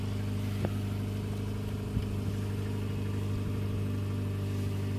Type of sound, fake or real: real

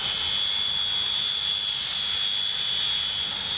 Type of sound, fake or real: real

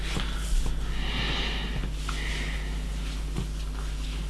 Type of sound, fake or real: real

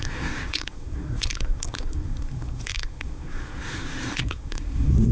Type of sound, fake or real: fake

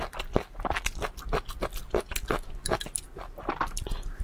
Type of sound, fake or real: real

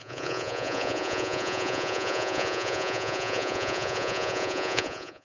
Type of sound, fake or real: fake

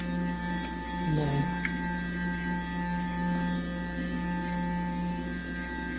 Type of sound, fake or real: real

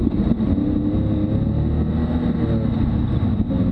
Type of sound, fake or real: real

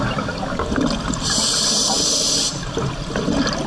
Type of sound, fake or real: real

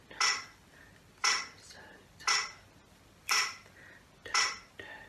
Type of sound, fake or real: real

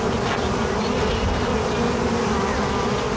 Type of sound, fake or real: real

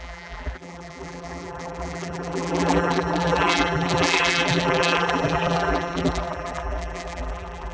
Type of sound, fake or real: fake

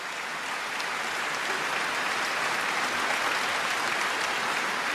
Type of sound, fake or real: real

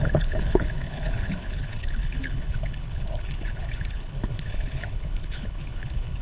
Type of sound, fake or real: fake